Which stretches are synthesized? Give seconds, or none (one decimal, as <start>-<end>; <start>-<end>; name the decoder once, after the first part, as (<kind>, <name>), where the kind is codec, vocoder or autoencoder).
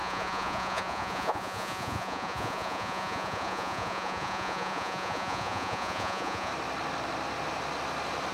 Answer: 0.0-6.5 (vocoder, Vocos)